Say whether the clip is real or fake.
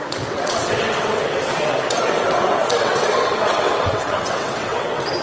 fake